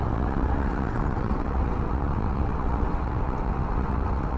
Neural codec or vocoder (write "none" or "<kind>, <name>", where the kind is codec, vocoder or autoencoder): vocoder, WaveNeXt